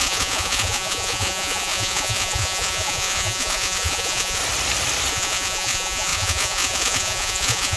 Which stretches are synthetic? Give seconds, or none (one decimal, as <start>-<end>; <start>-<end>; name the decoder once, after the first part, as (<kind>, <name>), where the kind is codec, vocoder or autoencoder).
0.0-4.4 (vocoder, Vocos); 5.1-7.8

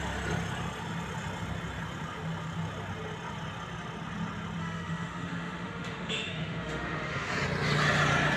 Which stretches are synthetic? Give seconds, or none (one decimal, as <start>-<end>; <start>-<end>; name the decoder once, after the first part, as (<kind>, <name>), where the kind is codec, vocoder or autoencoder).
4.6-7.3 (autoencoder, DAC-VAE)

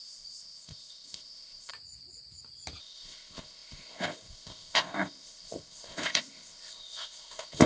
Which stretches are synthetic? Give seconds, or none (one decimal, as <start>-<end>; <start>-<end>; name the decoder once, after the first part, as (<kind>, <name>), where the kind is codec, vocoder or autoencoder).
0.0-1.7 (codec, ZipCodec); 2.8-7.7

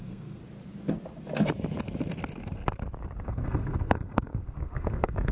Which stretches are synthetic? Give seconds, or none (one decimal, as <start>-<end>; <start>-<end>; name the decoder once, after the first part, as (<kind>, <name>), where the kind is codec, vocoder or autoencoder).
0.0-0.4 (codec, SNAC); 3.2-5.3

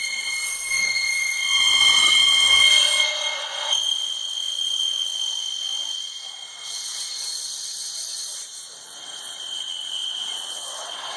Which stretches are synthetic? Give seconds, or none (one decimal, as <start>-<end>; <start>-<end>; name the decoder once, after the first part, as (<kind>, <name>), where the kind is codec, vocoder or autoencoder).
0.0-11.2 (vocoder, WaveNeXt)

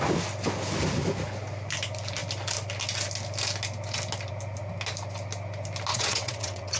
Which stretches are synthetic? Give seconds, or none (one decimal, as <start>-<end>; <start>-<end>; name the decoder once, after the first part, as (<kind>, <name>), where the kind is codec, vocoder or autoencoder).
5.9-6.8 (vocoder, WaveNeXt)

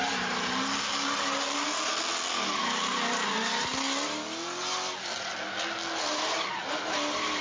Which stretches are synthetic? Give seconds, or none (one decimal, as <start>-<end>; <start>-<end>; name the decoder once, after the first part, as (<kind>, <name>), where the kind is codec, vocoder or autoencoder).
none